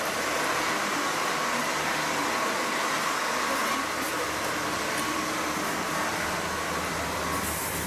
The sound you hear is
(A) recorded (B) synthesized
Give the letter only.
A